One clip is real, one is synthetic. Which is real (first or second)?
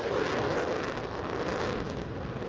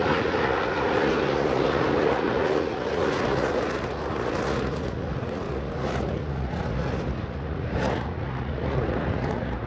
first